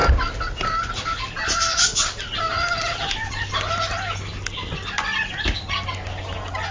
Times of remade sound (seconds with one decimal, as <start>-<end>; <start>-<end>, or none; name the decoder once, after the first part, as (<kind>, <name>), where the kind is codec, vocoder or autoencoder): none